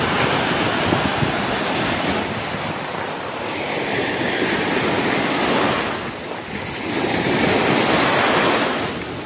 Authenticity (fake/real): real